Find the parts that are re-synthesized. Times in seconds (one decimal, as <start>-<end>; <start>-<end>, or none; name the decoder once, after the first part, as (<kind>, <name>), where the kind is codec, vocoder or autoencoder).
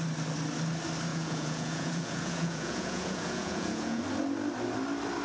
1.1-4.0 (vocoder, Vocos)